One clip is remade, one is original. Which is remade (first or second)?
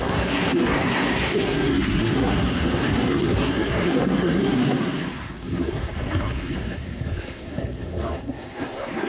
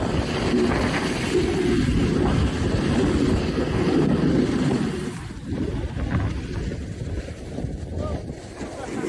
first